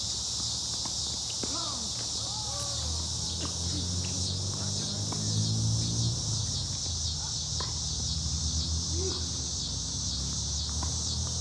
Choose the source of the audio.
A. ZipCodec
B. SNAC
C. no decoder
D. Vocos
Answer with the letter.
C